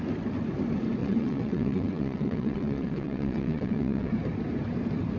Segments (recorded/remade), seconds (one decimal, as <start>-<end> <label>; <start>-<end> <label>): 0.0-1.0 recorded; 1.0-4.1 remade; 4.1-5.2 recorded

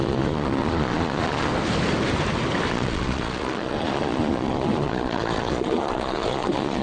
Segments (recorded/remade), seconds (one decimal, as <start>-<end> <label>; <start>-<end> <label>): 0.0-1.5 remade; 1.5-2.7 recorded; 2.7-6.8 remade

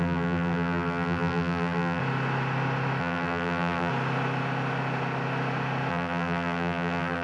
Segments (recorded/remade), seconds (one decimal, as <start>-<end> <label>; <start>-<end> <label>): 0.0-2.0 remade; 2.0-3.0 recorded; 3.0-3.9 remade; 3.9-5.9 recorded; 5.9-7.2 remade